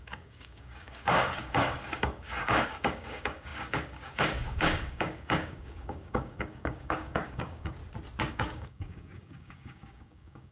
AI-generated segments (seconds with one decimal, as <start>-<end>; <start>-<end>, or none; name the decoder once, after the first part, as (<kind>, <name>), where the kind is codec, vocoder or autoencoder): 0.0-7.8 (codec, DAC); 8.3-10.5

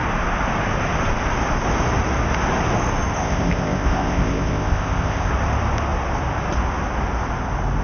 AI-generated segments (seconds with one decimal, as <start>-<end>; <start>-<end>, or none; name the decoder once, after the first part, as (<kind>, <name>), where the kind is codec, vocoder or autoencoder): 3.2-5.3 (codec, ZipCodec)

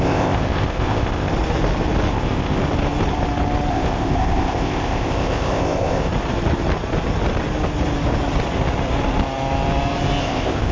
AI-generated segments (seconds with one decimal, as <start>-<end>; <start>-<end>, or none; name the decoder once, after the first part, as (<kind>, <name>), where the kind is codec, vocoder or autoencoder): 0.0-1.3 (codec, ZipCodec); 2.1-2.6; 3.7-6.1; 10.2-10.7

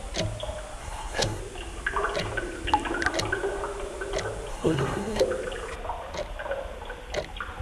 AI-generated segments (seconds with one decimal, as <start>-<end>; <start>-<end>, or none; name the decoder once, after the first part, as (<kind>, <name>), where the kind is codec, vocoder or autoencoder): 0.8-1.4 (codec, SNAC); 4.5-5.2

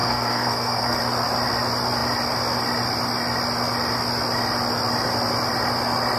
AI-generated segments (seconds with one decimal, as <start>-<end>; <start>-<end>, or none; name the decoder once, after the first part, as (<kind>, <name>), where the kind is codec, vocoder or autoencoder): 0.0-1.0 (codec, SNAC)